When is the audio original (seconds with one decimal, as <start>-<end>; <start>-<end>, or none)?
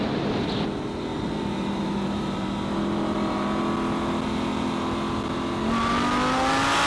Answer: 0.0-1.1; 3.6-6.9